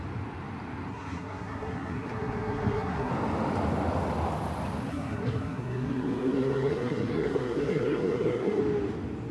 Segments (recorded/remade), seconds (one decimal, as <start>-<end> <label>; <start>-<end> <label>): 0.0-0.9 recorded; 0.9-3.1 remade; 3.1-4.9 recorded; 4.9-8.6 remade; 8.6-9.3 recorded